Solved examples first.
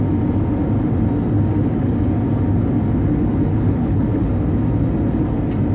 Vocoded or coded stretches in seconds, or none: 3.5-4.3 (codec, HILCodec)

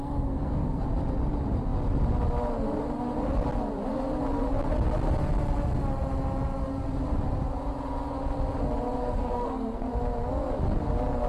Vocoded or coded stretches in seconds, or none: 0.0-0.8 (codec, SNAC); 9.0-9.9

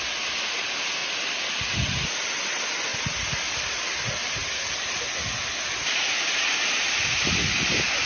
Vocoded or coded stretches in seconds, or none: none

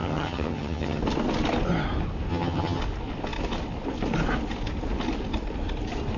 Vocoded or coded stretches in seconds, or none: 0.0-1.0 (vocoder, HiFi-GAN); 2.3-2.8

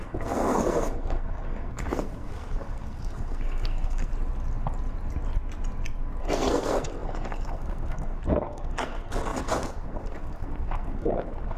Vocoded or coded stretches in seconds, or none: 0.0-4.1 (codec, SNAC); 6.2-11.6